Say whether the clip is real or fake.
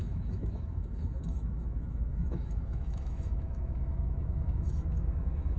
fake